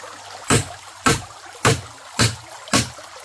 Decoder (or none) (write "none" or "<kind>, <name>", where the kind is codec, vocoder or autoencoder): none